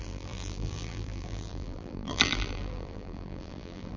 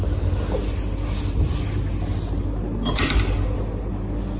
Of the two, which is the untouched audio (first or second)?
second